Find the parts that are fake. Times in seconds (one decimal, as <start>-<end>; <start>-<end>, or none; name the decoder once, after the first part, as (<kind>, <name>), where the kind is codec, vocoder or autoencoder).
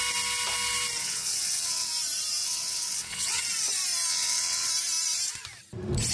1.0-1.9 (vocoder, WaveNeXt); 2.4-3.4; 4.1-4.7